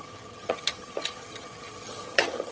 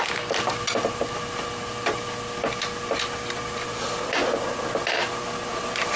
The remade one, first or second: first